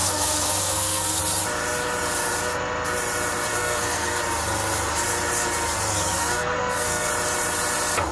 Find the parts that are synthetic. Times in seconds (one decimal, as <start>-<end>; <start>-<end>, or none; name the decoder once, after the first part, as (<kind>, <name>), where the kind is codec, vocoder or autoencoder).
0.0-1.2 (codec, SNAC); 3.5-4.2; 6.1-7.1